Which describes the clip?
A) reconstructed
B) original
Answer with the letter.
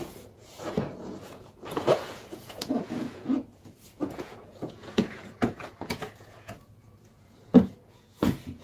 A